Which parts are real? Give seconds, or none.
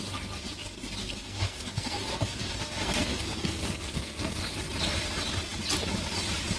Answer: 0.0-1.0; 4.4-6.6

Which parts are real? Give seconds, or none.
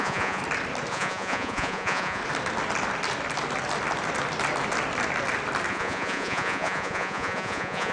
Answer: 0.4-0.9; 2.2-5.7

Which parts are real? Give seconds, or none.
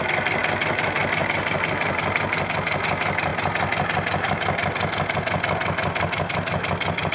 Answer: 0.0-7.1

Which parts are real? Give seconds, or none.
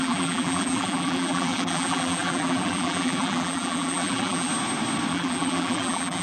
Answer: 4.5-5.1